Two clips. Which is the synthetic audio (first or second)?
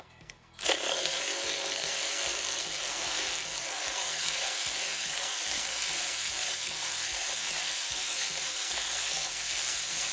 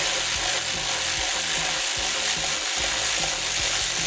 first